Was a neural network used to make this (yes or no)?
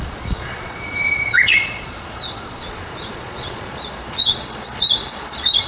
yes